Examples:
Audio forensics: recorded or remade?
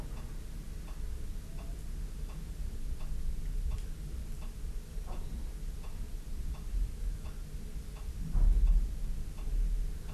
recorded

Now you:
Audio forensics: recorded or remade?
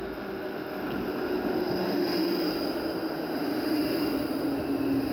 recorded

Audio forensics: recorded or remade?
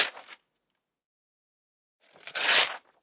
recorded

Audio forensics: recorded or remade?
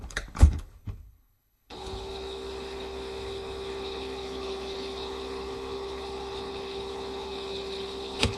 remade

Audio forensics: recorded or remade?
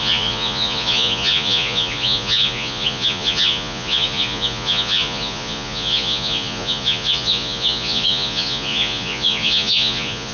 remade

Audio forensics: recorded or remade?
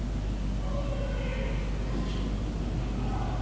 recorded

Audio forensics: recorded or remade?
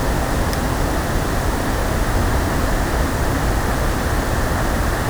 recorded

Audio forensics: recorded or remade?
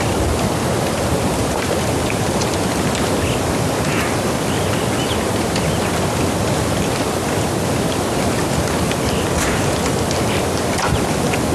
recorded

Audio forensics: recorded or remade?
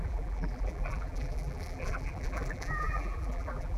remade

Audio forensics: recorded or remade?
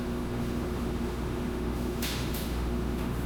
remade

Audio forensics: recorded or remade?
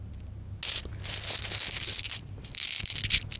recorded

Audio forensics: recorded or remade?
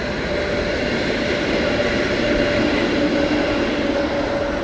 recorded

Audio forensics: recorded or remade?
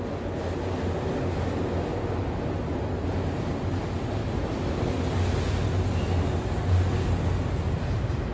recorded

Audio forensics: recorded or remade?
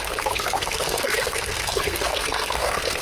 remade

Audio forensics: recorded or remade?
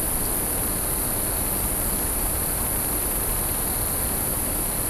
recorded